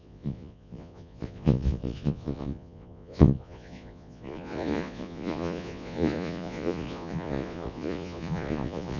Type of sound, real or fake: fake